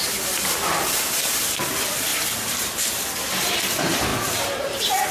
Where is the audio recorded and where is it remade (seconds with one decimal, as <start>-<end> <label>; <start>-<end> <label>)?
0.0-2.1 recorded; 2.1-3.3 remade; 3.3-5.1 recorded